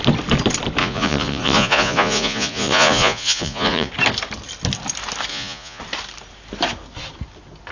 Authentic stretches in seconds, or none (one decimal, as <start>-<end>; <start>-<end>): 0.0-0.8; 3.9-5.3; 5.8-7.7